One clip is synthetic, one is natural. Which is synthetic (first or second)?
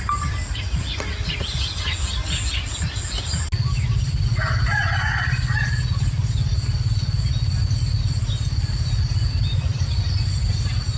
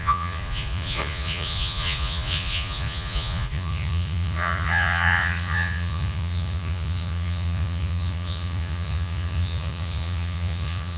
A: second